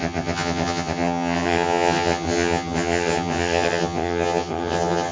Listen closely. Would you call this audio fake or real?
fake